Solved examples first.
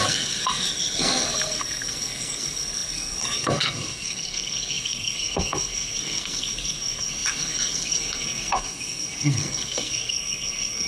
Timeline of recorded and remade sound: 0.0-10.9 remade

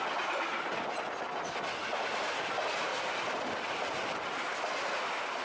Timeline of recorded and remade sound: 0.0-2.9 recorded; 2.9-3.5 remade; 3.5-5.4 recorded

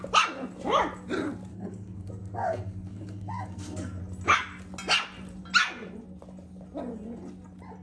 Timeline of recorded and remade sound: 0.0-1.5 recorded; 1.5-4.0 remade; 4.0-7.8 recorded

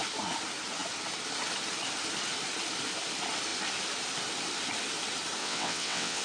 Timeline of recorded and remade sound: 0.0-5.4 recorded; 5.4-6.2 remade

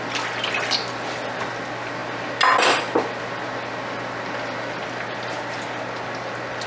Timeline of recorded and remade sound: 0.0-6.7 recorded